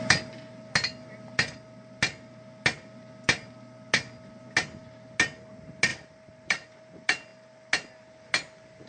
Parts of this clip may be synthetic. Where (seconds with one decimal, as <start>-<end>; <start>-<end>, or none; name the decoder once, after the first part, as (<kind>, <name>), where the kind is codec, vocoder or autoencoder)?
5.9-6.7 (vocoder, BigVGAN v2)